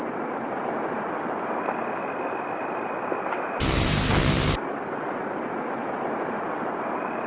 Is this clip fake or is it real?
real